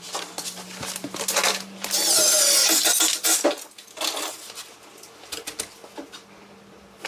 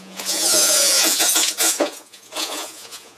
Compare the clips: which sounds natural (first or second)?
first